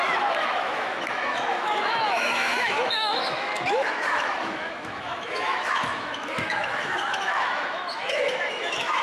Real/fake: fake